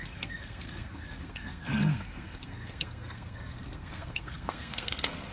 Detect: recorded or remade remade